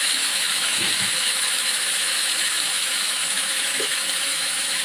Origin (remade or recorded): remade